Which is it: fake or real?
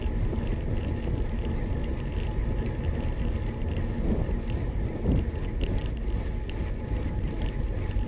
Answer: real